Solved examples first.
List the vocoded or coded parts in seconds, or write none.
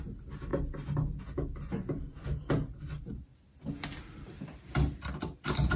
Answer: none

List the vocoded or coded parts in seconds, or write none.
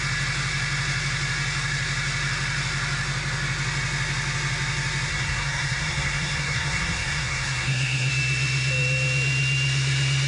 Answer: 5.1-8.1 (codec, SNAC)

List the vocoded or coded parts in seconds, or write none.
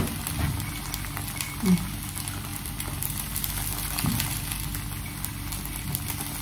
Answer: none